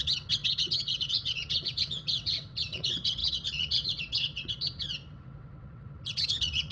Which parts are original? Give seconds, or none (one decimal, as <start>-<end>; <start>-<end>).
none